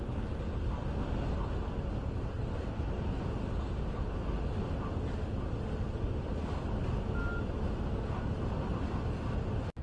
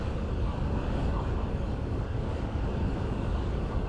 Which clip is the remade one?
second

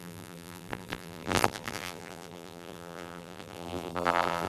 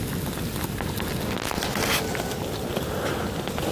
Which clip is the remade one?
first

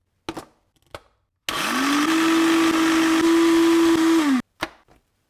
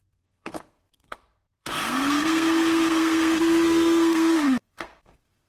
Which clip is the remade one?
second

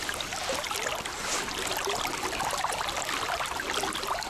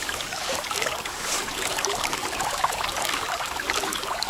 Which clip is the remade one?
second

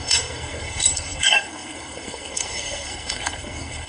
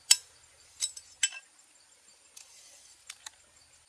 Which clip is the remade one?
first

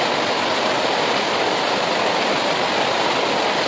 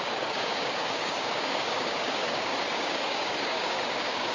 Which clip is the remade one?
second